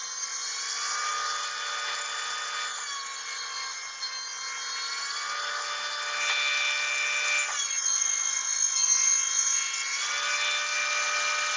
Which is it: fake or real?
real